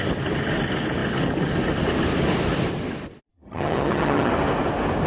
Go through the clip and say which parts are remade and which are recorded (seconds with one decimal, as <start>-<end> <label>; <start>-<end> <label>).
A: 0.0-3.3 recorded; 3.3-4.3 remade; 4.3-5.1 recorded